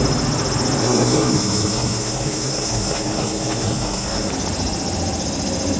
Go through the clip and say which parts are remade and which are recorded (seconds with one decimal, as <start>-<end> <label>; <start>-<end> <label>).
0.0-0.8 recorded; 0.8-4.3 remade; 4.3-5.8 recorded